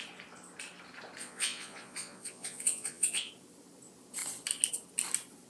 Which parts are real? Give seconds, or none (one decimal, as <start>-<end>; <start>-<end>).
0.0-1.2; 3.3-5.5

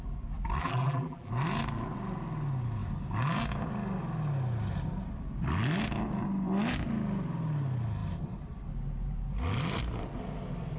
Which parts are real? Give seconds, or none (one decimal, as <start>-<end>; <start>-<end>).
0.0-0.6; 1.3-10.8